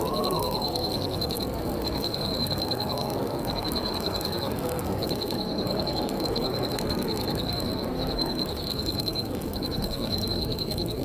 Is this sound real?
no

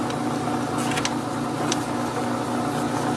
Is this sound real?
yes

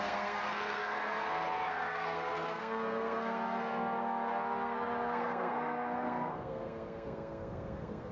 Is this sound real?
no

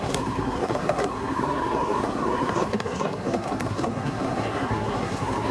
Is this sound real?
no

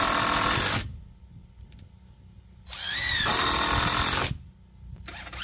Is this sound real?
yes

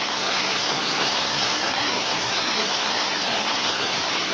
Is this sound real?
no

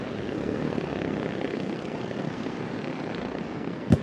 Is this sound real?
no